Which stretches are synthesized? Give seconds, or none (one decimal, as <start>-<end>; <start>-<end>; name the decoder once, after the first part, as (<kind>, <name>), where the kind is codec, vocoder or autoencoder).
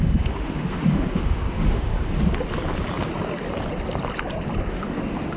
0.0-1.9 (autoencoder, DAC-VAE); 4.7-5.4